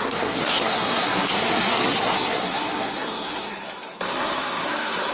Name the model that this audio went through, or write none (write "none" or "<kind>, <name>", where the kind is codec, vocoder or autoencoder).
codec, SNAC